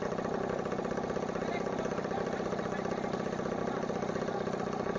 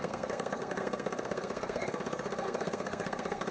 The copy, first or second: second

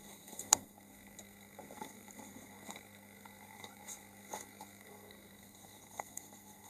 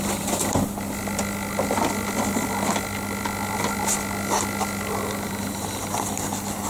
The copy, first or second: first